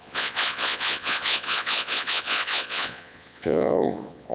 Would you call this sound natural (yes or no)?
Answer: no